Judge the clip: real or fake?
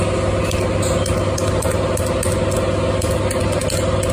real